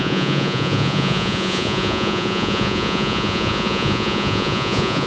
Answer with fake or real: fake